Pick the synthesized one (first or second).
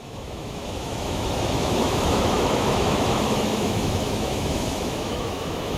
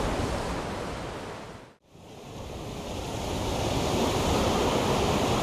first